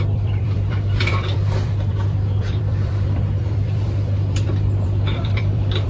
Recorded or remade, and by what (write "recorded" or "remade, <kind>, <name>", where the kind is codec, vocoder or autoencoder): remade, vocoder, BigVGAN v2